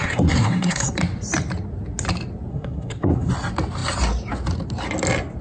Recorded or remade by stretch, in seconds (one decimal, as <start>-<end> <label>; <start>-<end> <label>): 0.0-0.9 remade; 0.9-2.5 recorded; 2.5-3.3 remade; 3.3-5.4 recorded